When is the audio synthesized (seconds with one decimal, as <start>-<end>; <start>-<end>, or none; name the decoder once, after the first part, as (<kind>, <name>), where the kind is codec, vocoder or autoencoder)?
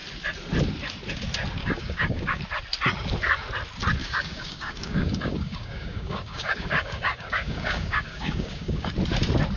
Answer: 1.6-2.4 (codec, DAC); 4.0-8.9